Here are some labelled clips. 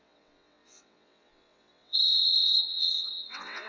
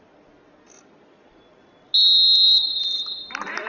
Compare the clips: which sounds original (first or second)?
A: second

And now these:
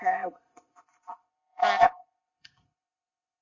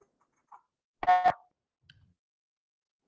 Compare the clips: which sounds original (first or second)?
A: second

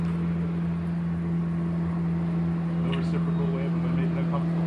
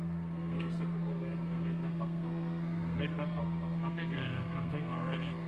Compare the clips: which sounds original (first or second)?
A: first